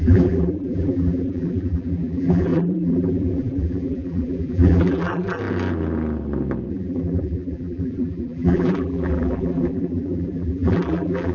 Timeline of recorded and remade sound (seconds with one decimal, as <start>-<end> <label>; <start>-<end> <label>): 0.0-5.4 remade; 5.4-6.7 recorded; 6.7-11.3 remade